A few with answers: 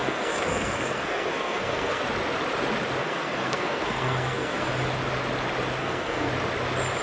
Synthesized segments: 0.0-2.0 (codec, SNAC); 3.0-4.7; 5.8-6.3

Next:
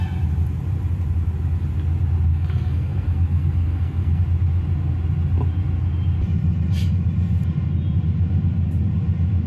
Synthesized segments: 2.3-4.2 (codec, SNAC)

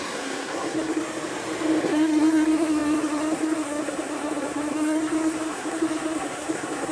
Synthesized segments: 0.0-1.0 (codec, SNAC); 1.8-6.9

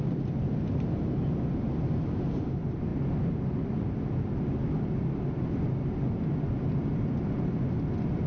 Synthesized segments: none

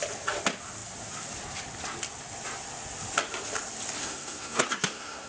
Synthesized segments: 4.0-5.3 (codec, SNAC)

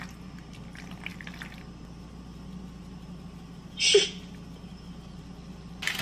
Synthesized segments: none

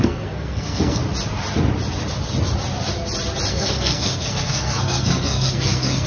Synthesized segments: 0.0-1.0 (codec, SNAC); 3.5-6.1

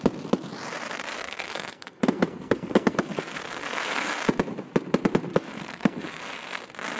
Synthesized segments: 1.1-4.2 (codec, SNAC); 5.3-6.6